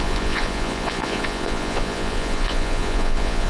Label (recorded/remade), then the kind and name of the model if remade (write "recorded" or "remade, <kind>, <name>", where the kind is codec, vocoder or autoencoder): remade, vocoder, Vocos